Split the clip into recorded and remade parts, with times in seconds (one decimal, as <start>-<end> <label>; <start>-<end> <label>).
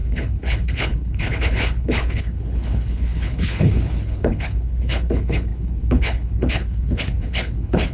0.0-7.9 remade